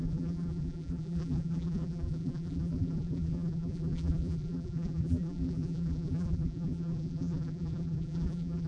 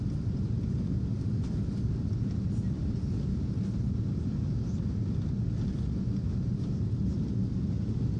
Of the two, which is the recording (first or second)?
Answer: second